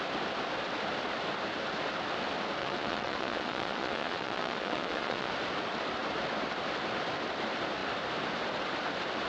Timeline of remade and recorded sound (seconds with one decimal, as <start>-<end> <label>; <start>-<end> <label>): 0.0-2.6 recorded; 2.6-5.3 remade; 5.3-9.3 recorded